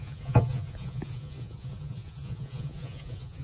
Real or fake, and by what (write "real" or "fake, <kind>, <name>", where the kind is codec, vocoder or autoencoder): fake, vocoder, Vocos